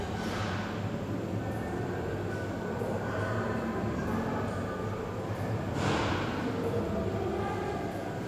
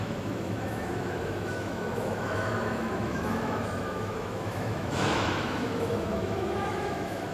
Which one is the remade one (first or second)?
second